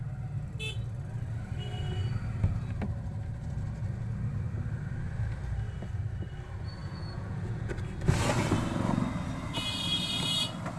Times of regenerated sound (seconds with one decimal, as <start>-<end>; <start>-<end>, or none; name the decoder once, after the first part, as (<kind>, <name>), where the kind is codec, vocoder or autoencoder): 6.8-7.7 (vocoder, Vocos)

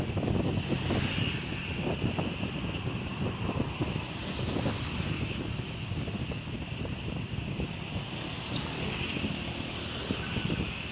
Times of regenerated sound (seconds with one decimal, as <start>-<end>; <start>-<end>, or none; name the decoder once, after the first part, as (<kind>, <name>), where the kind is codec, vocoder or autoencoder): none

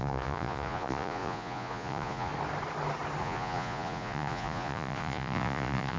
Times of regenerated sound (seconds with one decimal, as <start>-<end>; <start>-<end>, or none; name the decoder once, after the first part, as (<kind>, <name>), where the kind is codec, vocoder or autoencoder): 0.0-2.3 (vocoder, Vocos); 3.2-6.0

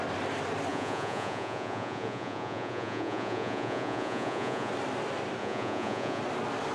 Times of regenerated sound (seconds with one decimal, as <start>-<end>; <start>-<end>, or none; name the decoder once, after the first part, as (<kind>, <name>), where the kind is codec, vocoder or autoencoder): 0.7-4.7 (vocoder, Vocos); 5.4-6.2

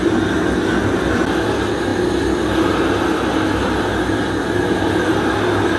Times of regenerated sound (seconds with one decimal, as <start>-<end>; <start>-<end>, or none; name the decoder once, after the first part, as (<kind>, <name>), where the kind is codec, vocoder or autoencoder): none

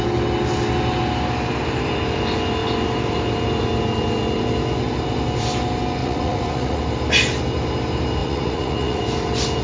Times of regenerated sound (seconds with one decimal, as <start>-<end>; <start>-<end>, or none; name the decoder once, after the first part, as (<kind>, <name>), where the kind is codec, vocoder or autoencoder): 6.0-6.8 (vocoder, Vocos); 8.2-9.0

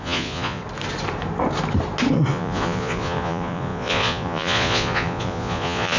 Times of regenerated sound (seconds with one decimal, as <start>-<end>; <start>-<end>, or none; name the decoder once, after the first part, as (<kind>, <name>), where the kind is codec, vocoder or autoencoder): 0.0-0.6 (vocoder, Vocos); 2.3-6.0